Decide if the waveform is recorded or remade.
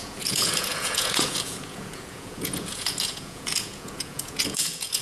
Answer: remade